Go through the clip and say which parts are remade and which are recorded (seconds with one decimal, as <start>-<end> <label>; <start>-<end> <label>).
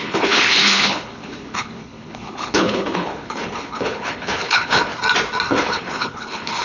0.0-4.9 remade; 4.9-5.5 recorded; 5.5-6.6 remade